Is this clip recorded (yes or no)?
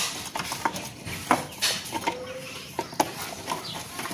yes